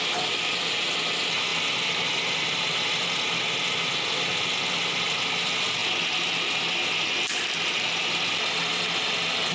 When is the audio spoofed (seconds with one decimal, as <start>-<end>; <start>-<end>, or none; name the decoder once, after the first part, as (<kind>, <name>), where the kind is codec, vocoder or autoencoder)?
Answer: none